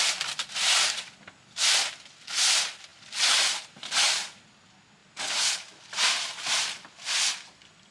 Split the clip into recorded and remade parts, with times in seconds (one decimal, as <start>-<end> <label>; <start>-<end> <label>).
0.0-7.9 recorded